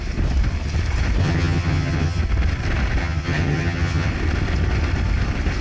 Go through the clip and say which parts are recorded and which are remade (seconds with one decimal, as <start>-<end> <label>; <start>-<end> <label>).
0.0-1.2 recorded; 1.2-2.2 remade; 2.2-3.0 recorded; 3.0-4.1 remade; 4.1-5.6 recorded